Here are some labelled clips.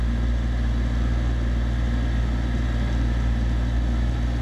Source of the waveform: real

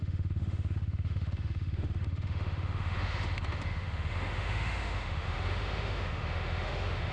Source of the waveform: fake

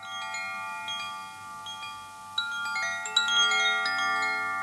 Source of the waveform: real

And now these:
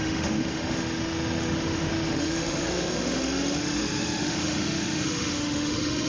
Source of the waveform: fake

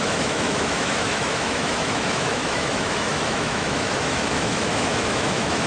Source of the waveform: fake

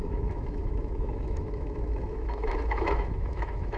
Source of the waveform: fake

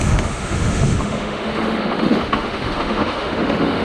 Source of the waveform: fake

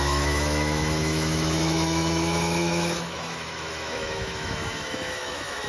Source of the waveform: fake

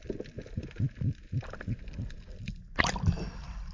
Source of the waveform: real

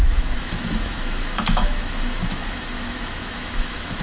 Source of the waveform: fake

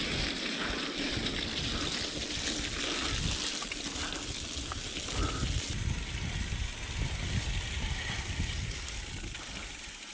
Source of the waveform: real